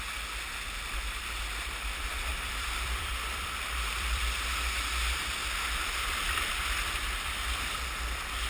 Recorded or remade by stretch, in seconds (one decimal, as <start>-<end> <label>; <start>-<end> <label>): 0.0-2.3 recorded; 2.3-6.5 remade; 6.5-8.5 recorded